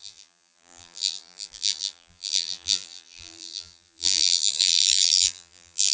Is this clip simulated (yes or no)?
yes